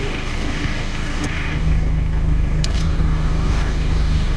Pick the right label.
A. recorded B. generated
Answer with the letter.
B